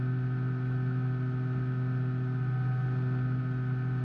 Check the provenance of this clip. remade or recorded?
recorded